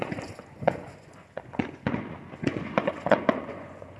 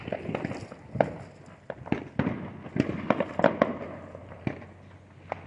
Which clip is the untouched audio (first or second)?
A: second